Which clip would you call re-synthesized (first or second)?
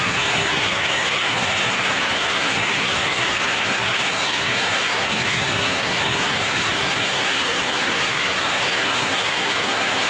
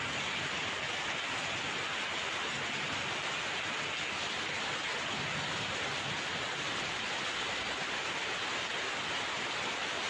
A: first